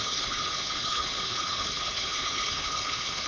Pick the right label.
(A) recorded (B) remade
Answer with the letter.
B